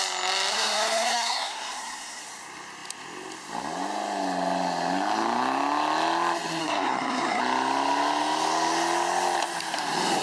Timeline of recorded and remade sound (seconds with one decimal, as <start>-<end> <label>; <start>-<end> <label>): 0.0-0.5 recorded; 0.5-2.2 remade; 2.2-6.6 recorded; 6.6-7.4 remade; 7.4-10.2 recorded